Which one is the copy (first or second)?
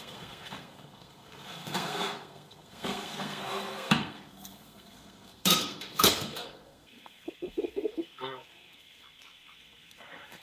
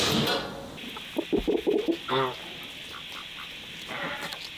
first